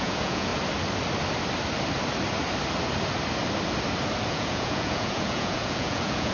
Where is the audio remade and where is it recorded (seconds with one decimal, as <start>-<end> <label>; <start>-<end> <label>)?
0.0-0.5 remade; 0.5-4.3 recorded; 4.3-6.3 remade